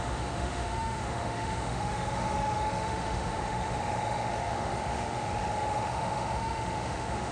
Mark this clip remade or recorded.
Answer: remade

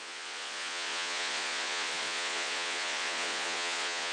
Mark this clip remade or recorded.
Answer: remade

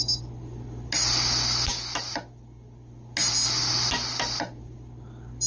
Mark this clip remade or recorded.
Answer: recorded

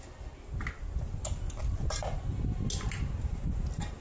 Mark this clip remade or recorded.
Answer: recorded